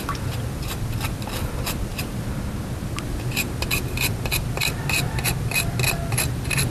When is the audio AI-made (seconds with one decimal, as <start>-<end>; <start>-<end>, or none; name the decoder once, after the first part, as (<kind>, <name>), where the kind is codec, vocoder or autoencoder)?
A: none